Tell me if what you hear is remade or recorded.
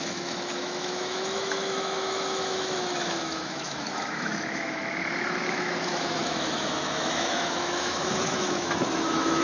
remade